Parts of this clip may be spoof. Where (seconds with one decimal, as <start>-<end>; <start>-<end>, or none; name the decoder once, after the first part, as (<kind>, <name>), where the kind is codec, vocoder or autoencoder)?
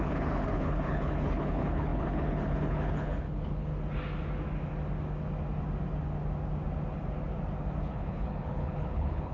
0.0-3.7 (codec, HILCodec); 7.8-9.3